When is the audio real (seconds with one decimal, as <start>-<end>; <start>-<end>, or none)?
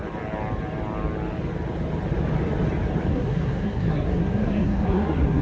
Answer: 0.0-3.1